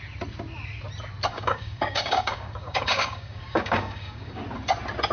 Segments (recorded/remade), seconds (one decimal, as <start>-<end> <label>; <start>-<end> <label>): 0.0-1.3 recorded; 1.3-4.4 remade; 4.4-5.1 recorded